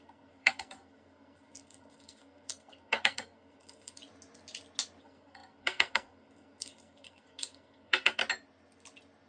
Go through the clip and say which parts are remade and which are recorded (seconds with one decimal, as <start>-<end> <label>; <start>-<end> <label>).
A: 0.0-4.0 remade; 4.0-5.0 recorded; 5.0-8.2 remade; 8.2-9.3 recorded